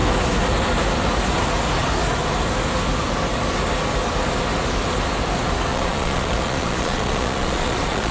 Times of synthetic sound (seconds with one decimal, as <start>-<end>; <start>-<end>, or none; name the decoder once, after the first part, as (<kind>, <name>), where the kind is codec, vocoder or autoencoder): 5.7-8.1 (vocoder, Vocos)